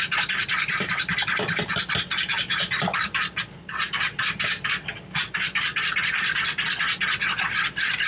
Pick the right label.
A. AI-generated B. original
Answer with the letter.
A